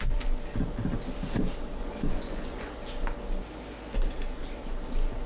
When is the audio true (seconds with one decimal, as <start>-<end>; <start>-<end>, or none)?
0.0-1.8; 2.7-5.3